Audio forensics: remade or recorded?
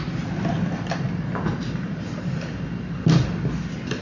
recorded